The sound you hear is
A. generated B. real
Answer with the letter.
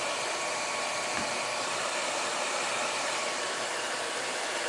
A